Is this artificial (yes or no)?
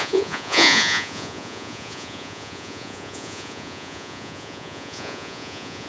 yes